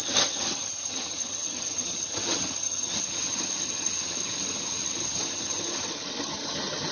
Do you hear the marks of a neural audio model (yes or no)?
yes